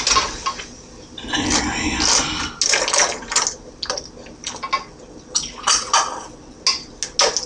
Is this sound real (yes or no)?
yes